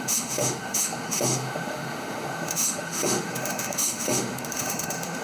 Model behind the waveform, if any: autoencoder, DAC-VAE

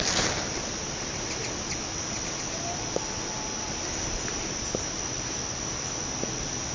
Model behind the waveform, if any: none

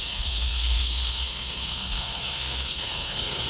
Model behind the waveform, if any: codec, SNAC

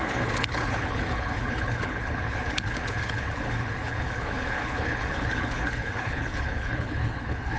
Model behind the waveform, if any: codec, HILCodec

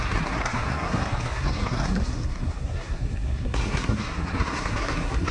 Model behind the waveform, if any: codec, SNAC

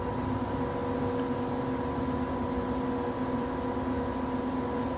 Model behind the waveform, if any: none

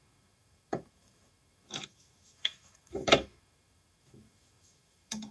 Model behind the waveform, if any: autoencoder, DAC-VAE